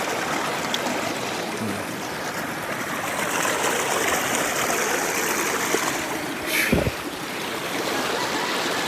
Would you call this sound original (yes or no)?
yes